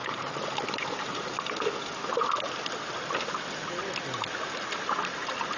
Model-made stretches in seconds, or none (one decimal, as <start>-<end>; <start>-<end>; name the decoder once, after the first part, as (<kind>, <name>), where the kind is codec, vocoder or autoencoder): 0.0-1.5 (vocoder, BigVGAN v2)